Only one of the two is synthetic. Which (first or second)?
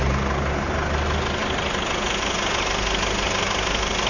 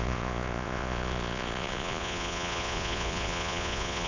second